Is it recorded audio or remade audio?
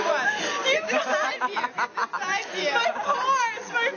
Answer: recorded